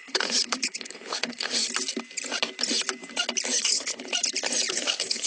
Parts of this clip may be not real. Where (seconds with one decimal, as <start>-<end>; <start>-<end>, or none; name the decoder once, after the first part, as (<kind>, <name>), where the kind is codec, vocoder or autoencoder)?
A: 0.0-1.6 (codec, HILCodec); 3.6-4.1; 4.7-5.3

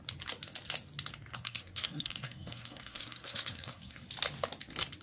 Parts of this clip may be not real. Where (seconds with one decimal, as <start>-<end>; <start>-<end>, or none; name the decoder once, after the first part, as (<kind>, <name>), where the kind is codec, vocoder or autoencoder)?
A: 1.3-4.0 (codec, SNAC)

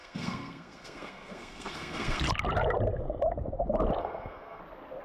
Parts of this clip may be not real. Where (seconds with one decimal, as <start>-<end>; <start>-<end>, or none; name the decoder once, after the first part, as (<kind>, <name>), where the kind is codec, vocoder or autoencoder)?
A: 0.0-2.2 (codec, SNAC); 4.0-4.6

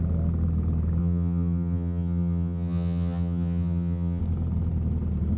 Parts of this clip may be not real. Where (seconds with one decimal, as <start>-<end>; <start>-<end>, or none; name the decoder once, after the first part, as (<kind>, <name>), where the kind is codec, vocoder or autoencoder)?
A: 1.0-4.2 (vocoder, HiFi-GAN)

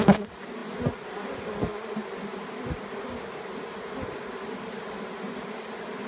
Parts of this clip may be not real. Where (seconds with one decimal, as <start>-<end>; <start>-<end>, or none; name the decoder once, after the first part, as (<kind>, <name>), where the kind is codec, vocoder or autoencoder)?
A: none

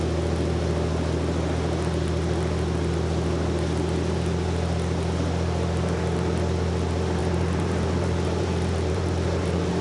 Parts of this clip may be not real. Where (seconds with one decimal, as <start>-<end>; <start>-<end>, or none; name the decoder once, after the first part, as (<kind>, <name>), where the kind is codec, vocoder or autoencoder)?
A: 7.2-9.8 (vocoder, BigVGAN v2)